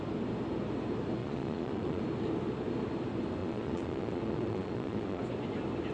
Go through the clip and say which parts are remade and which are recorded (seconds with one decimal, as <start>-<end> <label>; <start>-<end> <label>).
0.0-1.2 recorded; 1.2-2.0 remade; 2.0-3.4 recorded; 3.4-5.2 remade; 5.2-5.9 recorded